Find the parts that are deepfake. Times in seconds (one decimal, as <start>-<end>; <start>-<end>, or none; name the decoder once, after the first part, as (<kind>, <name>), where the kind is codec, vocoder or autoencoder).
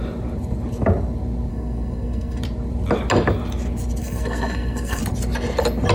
1.5-2.4 (codec, SNAC); 4.0-5.0